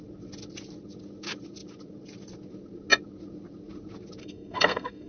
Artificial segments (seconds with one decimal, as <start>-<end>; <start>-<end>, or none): 4.2-5.1